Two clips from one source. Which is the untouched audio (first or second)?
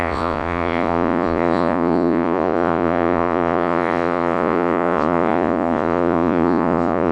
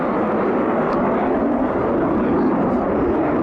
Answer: second